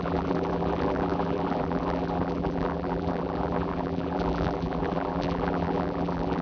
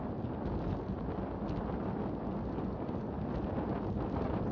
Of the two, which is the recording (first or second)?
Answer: second